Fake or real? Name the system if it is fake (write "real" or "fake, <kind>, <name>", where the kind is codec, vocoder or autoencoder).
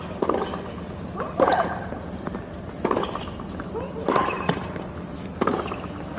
real